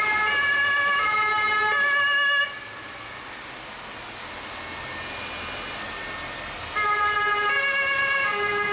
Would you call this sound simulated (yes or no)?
no